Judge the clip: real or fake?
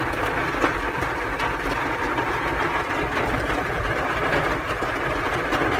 real